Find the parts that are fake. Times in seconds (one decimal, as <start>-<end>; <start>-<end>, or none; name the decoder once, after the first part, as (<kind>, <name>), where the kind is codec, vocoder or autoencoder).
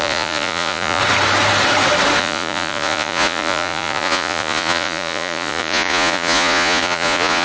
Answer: 0.0-1.0 (vocoder, Vocos); 2.2-7.4